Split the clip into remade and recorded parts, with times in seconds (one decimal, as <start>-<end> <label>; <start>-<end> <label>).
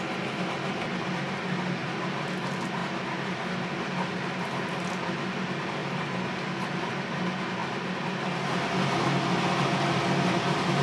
0.0-10.8 recorded